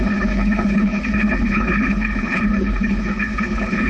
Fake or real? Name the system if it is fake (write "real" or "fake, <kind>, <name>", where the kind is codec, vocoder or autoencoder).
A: fake, codec, HILCodec